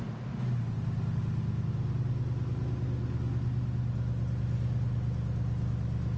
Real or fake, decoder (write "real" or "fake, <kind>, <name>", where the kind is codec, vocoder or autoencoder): real